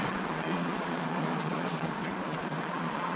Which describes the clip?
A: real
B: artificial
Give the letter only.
B